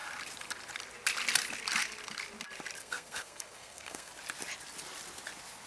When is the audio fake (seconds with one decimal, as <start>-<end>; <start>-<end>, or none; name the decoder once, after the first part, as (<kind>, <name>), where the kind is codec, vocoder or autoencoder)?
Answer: 2.8-4.1 (codec, SNAC)